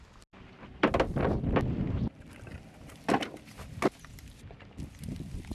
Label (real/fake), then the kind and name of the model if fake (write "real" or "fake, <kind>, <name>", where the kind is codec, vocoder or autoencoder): real